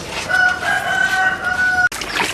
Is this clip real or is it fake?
real